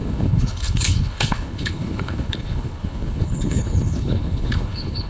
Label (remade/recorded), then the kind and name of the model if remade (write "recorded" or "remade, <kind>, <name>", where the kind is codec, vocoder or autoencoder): remade, codec, HILCodec